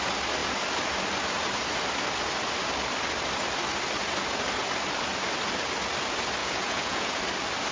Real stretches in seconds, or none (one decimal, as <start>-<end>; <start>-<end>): 0.0-6.4; 7.2-7.7